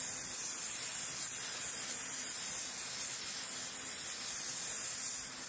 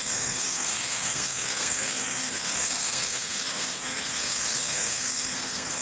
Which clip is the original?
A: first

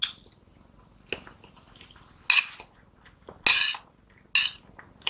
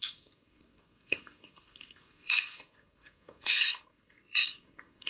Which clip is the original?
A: first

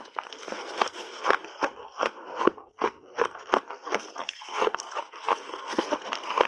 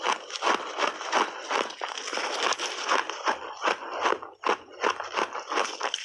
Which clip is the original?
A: second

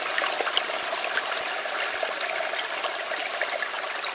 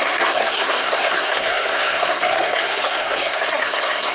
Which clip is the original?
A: first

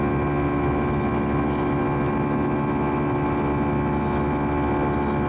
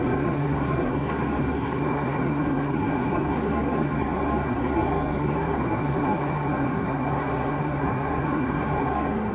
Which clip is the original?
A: first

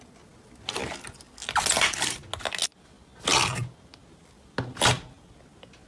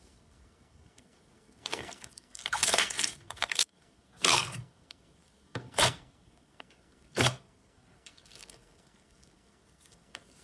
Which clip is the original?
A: first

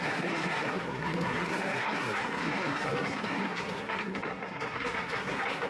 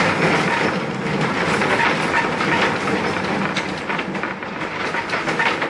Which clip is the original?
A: second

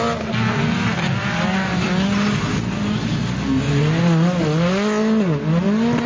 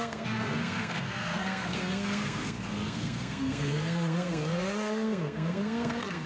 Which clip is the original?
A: first